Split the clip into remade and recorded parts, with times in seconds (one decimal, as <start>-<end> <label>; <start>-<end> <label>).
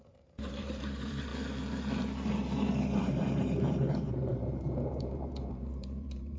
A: 0.0-1.3 remade; 1.3-3.0 recorded; 3.0-6.4 remade